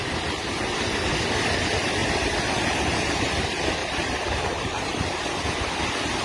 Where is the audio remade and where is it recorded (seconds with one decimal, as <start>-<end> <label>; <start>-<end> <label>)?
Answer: 0.0-2.0 recorded; 2.0-3.3 remade; 3.3-3.8 recorded; 3.8-5.2 remade; 5.2-6.2 recorded